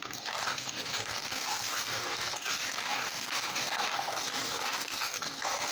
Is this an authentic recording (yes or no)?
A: no